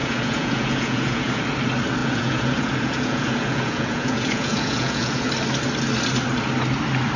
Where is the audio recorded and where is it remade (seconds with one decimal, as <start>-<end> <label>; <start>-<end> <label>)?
0.0-1.4 remade; 1.4-2.0 recorded; 2.0-5.3 remade; 5.3-7.2 recorded